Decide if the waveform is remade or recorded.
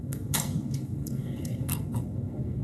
remade